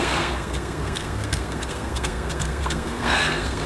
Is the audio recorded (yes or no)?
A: no